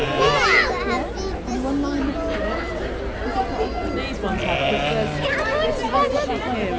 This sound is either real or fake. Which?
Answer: real